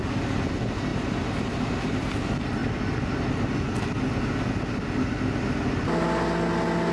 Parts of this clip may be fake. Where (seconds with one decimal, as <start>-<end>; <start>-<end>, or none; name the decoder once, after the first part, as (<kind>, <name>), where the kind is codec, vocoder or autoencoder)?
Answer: none